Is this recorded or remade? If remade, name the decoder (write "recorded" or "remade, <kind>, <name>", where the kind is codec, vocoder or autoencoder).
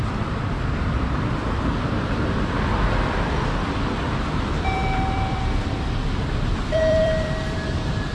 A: remade, vocoder, BigVGAN v2